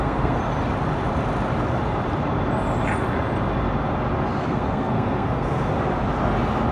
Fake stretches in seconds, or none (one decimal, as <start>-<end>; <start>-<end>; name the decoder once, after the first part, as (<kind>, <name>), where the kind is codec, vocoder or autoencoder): 0.0-0.4 (codec, SNAC); 4.4-5.7